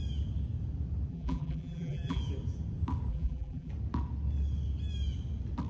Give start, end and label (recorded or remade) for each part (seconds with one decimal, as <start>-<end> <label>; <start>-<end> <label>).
0.0-1.1 recorded; 1.1-2.2 remade; 2.2-3.1 recorded; 3.1-3.7 remade; 3.7-5.7 recorded